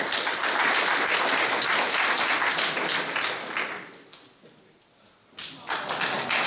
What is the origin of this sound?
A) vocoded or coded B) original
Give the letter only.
B